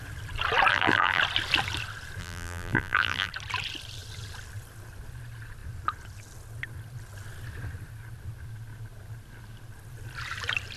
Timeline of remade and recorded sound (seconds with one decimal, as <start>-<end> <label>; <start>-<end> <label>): 0.0-0.7 recorded; 0.7-1.2 remade; 1.2-2.2 recorded; 2.2-3.3 remade; 3.3-10.8 recorded